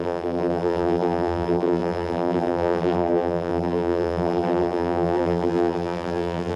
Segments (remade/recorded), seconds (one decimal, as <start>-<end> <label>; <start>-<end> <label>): 0.0-6.6 remade